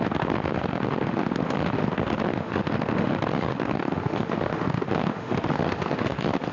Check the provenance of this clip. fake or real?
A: fake